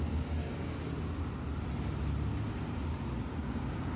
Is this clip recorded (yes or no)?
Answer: yes